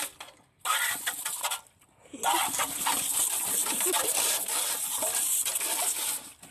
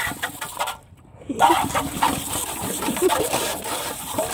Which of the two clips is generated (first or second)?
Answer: second